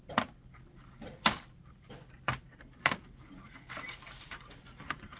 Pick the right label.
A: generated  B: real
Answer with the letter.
B